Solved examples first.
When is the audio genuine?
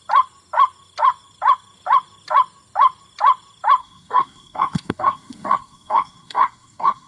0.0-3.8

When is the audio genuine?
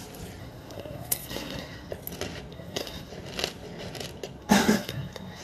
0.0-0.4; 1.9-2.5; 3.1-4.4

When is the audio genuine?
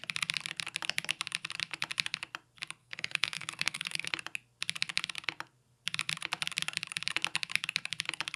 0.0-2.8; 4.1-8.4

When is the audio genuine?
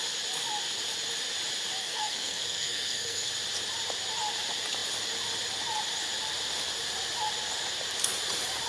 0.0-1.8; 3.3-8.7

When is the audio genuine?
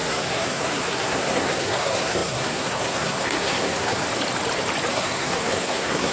4.0-4.9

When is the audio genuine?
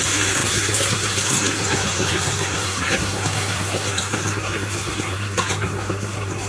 none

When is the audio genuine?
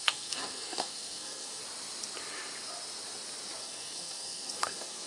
1.6-3.6